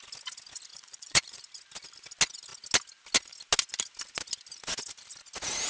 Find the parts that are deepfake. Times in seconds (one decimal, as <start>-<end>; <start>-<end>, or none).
0.7-1.4